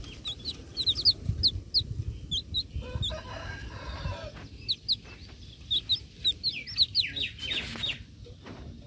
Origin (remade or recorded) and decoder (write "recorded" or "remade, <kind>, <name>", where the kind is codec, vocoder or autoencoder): recorded